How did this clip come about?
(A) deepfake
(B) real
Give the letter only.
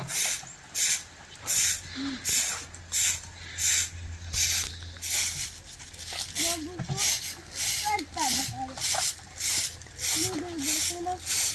B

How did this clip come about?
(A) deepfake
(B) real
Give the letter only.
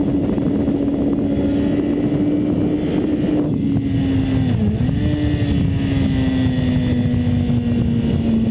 B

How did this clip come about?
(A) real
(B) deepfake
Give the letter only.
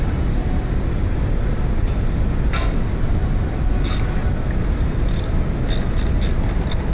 A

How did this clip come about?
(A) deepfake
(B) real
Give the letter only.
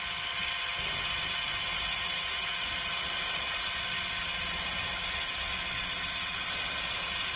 B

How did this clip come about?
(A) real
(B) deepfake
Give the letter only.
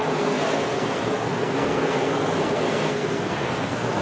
B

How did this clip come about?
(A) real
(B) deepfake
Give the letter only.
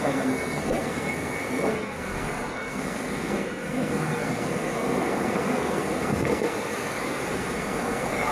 B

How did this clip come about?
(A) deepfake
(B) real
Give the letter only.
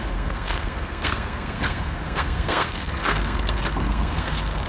A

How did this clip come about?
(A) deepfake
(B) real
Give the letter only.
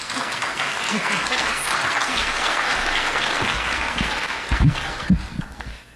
A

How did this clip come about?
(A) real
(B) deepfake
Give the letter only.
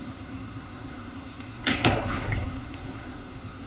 B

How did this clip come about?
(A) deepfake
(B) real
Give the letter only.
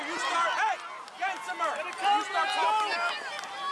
B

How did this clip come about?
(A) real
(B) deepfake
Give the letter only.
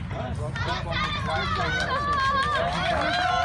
A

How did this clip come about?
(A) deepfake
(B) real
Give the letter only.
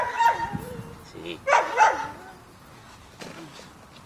B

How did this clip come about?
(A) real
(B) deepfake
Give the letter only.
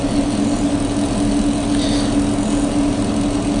A